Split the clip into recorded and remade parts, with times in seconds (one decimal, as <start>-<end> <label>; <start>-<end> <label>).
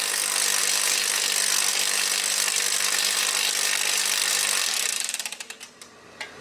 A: 0.0-1.7 recorded; 1.7-4.3 remade; 4.3-6.4 recorded